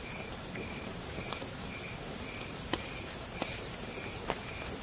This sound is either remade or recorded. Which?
remade